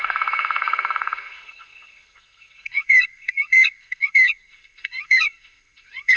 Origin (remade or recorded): remade